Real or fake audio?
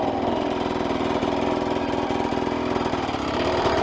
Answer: real